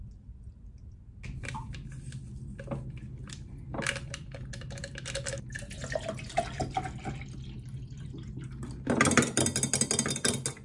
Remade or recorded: recorded